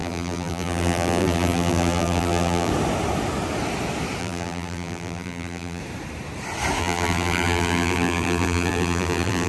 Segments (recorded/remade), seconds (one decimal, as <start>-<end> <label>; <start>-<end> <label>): 0.0-2.7 remade; 2.7-4.2 recorded; 4.2-5.8 remade; 5.8-6.8 recorded; 6.8-9.5 remade

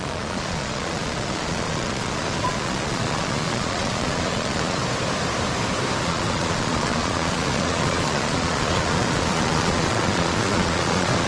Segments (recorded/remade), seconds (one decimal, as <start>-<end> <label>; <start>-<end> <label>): 0.0-4.8 remade; 4.8-6.0 recorded; 6.0-11.3 remade